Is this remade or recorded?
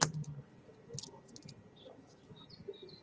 recorded